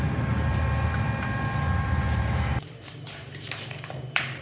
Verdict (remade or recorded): remade